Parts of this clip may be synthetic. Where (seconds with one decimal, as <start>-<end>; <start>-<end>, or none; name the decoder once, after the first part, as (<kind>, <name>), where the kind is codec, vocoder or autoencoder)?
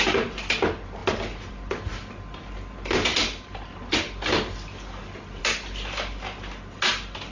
none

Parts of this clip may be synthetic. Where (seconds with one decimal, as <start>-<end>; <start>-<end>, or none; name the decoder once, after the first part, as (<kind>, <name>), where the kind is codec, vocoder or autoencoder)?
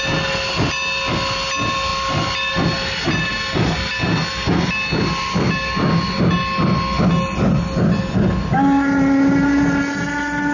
none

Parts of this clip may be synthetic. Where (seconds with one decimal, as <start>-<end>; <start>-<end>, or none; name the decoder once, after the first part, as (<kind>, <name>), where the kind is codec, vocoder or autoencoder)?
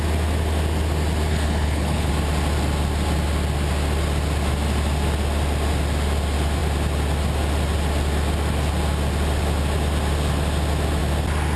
1.3-2.1 (codec, HILCodec)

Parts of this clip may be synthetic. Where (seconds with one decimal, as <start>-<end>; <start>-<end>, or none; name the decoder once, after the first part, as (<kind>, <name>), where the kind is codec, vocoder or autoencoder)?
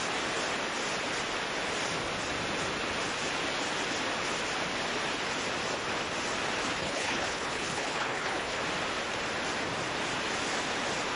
6.8-8.6 (codec, HILCodec)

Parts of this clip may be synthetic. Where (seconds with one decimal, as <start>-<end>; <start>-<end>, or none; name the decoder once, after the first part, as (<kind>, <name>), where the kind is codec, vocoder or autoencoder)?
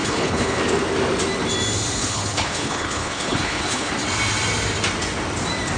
0.0-0.6 (codec, HILCodec); 2.0-3.9